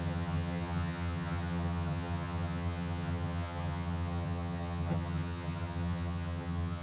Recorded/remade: remade